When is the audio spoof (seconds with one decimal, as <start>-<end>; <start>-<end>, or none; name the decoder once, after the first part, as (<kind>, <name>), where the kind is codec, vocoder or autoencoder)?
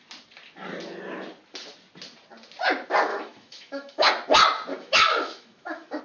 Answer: 3.1-4.1 (autoencoder, DAC-VAE); 4.7-6.0